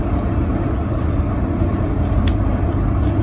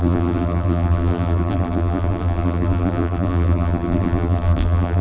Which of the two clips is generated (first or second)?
second